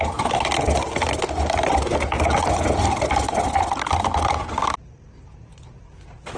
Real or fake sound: real